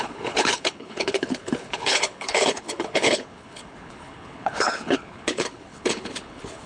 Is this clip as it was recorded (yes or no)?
no